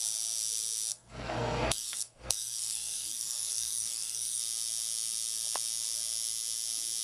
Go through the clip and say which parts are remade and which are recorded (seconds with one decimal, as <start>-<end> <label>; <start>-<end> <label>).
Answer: 0.0-0.9 recorded; 0.9-4.4 remade; 4.4-7.0 recorded